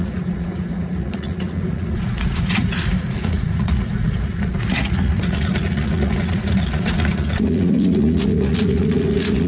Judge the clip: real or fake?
fake